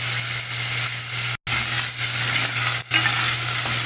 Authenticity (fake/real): real